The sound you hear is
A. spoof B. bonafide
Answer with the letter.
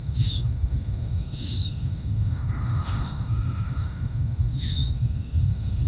A